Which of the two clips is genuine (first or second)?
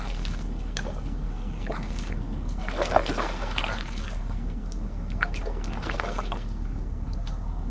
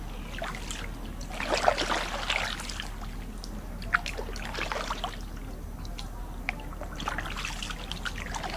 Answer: second